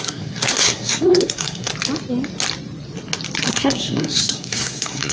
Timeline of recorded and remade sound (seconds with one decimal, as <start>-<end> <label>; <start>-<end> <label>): 0.0-1.7 remade; 1.7-3.5 recorded; 3.5-5.1 remade

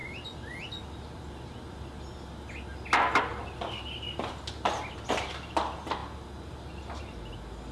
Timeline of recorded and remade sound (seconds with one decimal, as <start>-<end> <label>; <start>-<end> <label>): 0.0-7.7 recorded